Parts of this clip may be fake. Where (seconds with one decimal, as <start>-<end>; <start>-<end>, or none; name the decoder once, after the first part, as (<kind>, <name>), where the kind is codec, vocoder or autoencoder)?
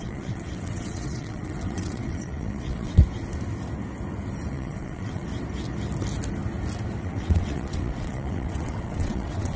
0.0-3.0 (vocoder, WaveNeXt); 4.5-5.3; 7.0-9.6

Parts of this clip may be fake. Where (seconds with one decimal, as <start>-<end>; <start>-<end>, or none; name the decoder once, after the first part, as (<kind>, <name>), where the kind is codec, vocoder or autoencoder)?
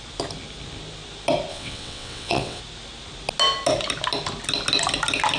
1.5-2.6 (vocoder, WaveNeXt)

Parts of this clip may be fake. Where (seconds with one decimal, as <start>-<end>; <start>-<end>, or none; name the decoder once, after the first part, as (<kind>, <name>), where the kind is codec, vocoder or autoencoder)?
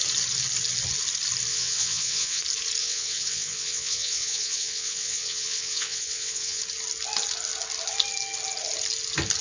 1.5-2.4 (vocoder, WaveNeXt); 2.8-6.6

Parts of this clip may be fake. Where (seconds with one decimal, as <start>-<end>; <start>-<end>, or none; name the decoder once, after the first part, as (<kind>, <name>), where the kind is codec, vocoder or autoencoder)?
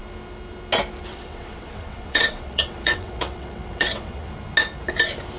1.1-4.3 (vocoder, WaveNeXt)